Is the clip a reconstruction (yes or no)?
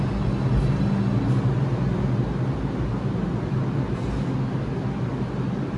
no